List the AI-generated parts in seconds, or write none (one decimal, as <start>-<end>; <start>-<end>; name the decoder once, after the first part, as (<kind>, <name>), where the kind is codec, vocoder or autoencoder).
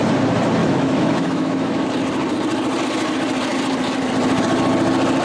0.6-1.8 (autoencoder, DAC-VAE)